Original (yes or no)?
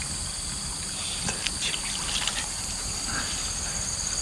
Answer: yes